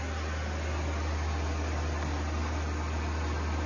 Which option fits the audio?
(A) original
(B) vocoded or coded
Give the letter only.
A